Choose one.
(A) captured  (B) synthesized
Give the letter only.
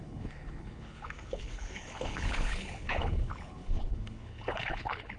B